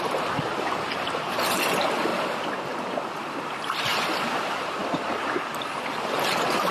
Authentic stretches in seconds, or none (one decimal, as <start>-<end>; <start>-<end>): 0.0-6.7